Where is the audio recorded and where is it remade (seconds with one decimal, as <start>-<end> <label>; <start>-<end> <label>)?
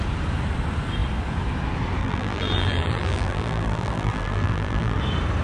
0.0-2.0 recorded; 2.0-5.0 remade; 5.0-5.4 recorded